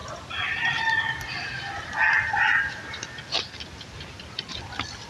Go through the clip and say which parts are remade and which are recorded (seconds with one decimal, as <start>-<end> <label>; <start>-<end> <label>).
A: 0.0-5.1 recorded